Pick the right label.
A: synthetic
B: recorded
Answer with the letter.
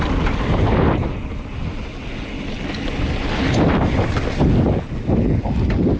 B